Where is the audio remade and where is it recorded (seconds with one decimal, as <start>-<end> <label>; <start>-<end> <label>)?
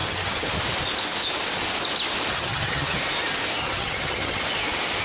0.0-0.5 remade; 0.5-2.3 recorded; 2.3-3.0 remade; 3.0-3.6 recorded; 3.6-4.4 remade; 4.4-5.0 recorded